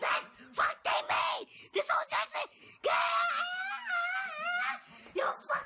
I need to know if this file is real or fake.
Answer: real